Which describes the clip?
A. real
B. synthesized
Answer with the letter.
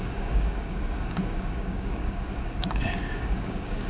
B